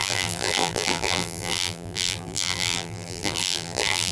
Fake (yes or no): yes